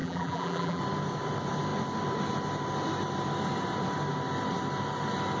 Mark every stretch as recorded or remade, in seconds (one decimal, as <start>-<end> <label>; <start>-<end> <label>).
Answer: 0.0-0.8 remade; 0.8-5.4 recorded